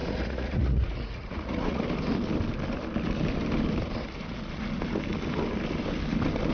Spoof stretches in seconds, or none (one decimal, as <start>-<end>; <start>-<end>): 0.0-1.8